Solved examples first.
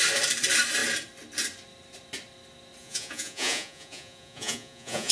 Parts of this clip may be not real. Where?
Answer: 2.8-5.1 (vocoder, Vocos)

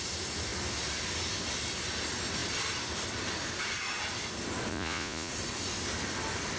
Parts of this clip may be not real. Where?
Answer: 4.7-5.3 (vocoder, Vocos)

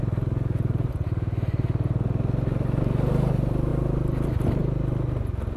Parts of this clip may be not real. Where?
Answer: none

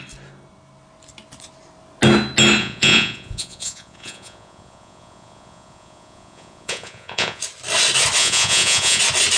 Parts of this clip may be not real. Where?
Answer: 2.6-7.4 (vocoder, Vocos); 8.2-9.0

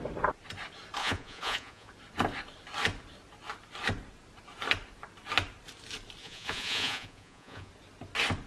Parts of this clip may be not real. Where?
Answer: 1.0-1.9 (vocoder, Vocos); 6.2-7.7

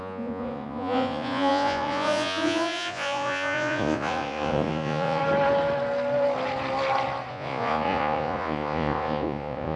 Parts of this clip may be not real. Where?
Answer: 0.0-5.2 (vocoder, Vocos); 7.3-9.8